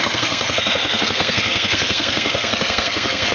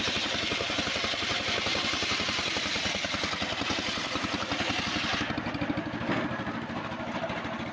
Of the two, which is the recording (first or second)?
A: second